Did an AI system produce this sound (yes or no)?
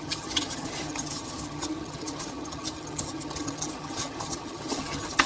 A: yes